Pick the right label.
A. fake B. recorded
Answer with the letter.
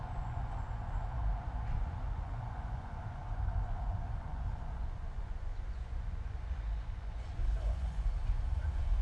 A